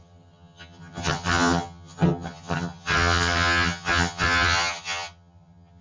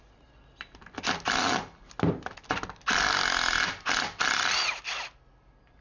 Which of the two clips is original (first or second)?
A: second